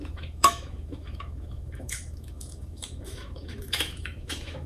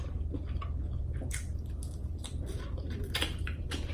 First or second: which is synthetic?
first